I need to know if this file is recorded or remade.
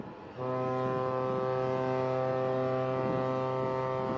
recorded